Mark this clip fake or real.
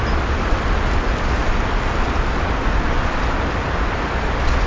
real